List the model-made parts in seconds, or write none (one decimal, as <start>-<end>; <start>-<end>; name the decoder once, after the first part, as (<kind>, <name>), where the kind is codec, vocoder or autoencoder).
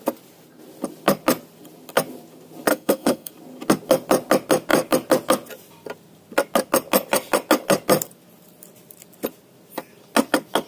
2.7-3.3 (codec, SNAC)